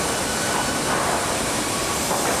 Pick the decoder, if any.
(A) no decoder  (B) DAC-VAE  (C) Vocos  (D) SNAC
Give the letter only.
A